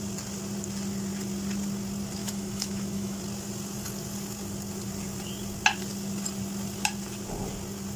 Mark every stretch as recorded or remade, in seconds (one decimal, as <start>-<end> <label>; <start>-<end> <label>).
0.0-2.2 recorded; 2.2-3.2 remade; 3.2-8.0 recorded